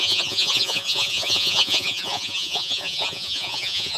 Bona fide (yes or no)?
no